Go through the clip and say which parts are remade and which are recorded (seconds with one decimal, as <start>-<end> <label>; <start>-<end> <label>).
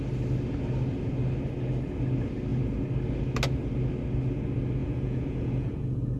0.0-4.8 recorded; 4.8-6.2 remade